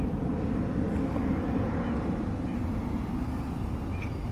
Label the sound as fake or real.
real